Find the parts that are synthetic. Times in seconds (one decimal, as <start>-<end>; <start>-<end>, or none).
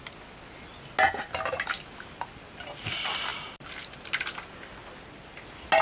none